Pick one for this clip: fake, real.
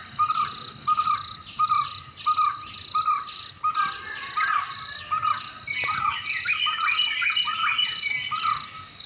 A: real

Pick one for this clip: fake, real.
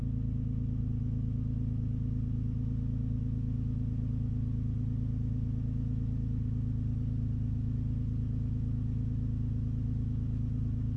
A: real